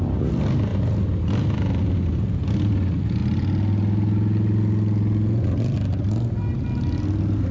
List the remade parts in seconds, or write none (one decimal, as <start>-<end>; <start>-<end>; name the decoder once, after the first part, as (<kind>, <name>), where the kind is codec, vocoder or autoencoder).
none